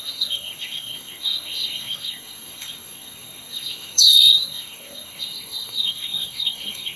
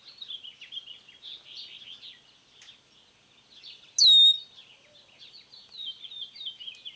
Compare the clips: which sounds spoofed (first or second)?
first